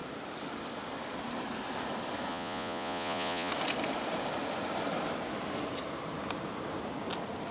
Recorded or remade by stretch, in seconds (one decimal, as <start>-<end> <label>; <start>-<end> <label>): 0.0-2.3 recorded; 2.3-3.5 remade; 3.5-7.5 recorded